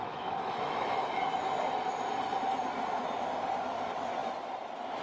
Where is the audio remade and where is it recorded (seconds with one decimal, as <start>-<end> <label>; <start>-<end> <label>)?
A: 0.0-1.3 remade; 1.3-5.0 recorded